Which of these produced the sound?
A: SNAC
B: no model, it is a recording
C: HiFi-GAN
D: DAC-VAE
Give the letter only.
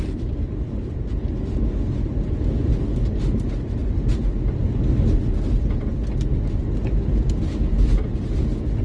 B